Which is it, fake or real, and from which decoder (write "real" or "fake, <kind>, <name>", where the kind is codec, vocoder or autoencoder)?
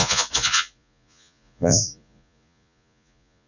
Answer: fake, vocoder, Vocos